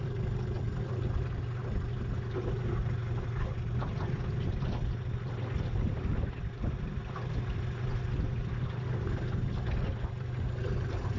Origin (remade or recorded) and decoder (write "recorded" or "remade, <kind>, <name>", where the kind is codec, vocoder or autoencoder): recorded